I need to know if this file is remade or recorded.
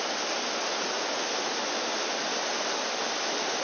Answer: recorded